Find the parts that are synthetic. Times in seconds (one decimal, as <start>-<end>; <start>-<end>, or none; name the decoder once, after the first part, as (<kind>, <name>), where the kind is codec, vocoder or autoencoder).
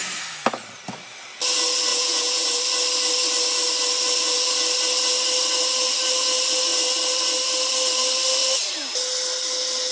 1.9-2.6 (vocoder, Vocos)